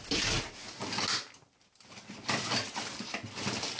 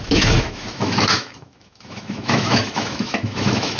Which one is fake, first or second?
second